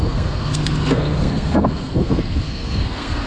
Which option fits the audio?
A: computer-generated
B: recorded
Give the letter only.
A